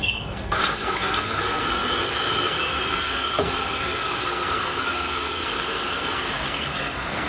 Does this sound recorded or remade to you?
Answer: remade